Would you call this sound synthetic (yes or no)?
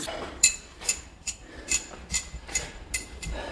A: yes